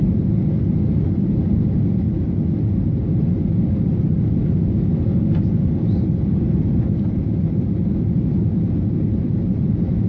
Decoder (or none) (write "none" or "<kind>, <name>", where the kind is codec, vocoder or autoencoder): none